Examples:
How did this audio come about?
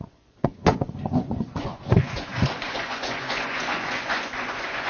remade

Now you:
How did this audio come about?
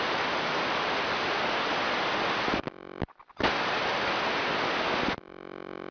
recorded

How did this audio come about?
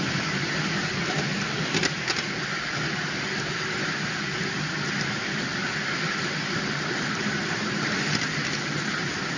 recorded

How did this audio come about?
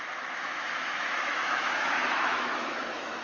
remade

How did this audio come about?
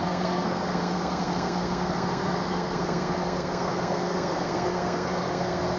remade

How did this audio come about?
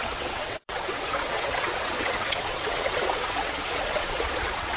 remade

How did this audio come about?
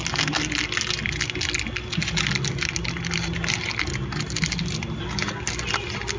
recorded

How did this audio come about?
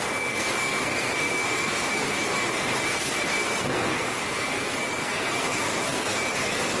remade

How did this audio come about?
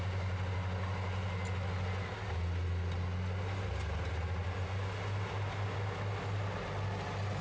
recorded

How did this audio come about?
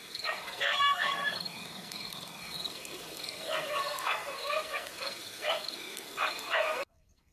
remade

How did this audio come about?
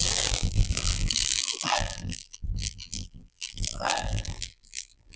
remade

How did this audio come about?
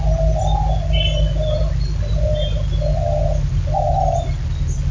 recorded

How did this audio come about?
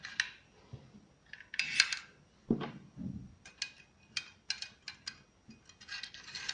recorded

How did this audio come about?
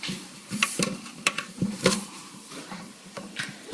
remade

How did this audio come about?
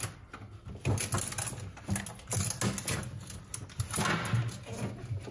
recorded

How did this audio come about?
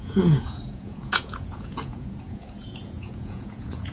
remade